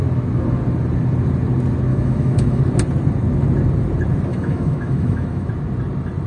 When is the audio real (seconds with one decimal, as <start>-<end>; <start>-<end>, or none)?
0.0-1.9; 2.6-4.3; 5.5-6.3